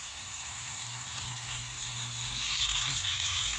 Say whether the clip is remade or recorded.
remade